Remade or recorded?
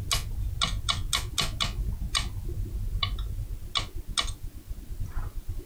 recorded